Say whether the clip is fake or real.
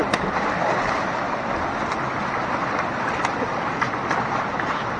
real